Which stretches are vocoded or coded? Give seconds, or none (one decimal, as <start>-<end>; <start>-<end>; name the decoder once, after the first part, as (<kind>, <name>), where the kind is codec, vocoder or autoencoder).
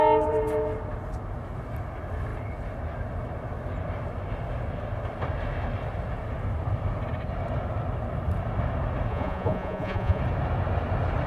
9.1-10.2 (vocoder, Vocos)